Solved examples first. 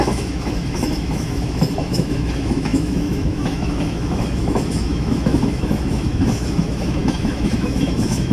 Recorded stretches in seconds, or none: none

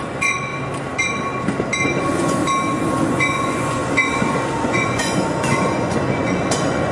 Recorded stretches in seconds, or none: 0.5-2.0; 2.4-3.1

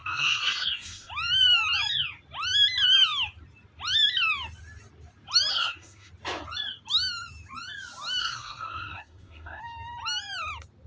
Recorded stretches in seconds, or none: 1.1-5.5; 6.1-8.2; 9.6-10.9

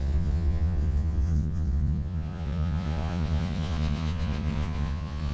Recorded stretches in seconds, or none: none

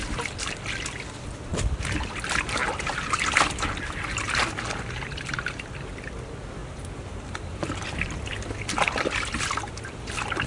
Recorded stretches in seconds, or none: 0.0-2.6; 5.7-10.5

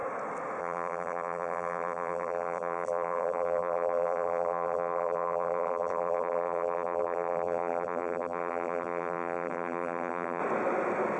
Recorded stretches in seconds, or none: 0.0-0.6; 10.4-11.2